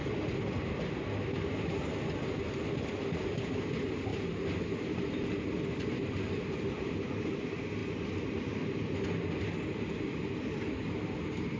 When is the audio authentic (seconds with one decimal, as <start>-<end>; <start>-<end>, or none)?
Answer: 0.0-11.6